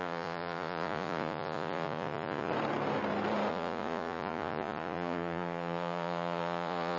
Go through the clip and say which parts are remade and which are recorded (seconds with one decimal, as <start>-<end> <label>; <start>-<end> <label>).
0.0-2.5 remade; 2.5-3.5 recorded; 3.5-7.0 remade